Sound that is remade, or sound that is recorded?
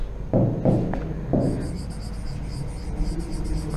recorded